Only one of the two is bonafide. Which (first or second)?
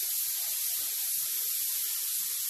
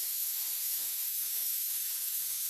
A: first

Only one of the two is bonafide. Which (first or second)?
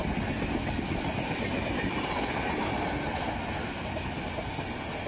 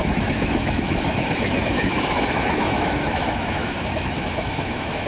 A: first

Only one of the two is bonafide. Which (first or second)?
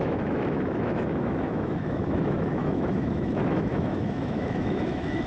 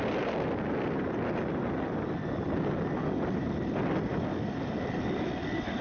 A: second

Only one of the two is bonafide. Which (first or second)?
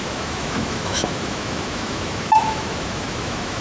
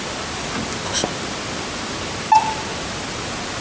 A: second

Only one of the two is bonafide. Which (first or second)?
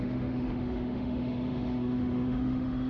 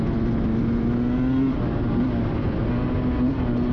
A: second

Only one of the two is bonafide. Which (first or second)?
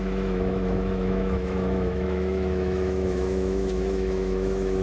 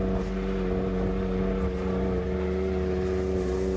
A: second